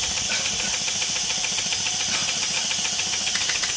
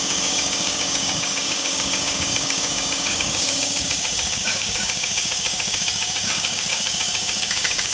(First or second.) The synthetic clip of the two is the second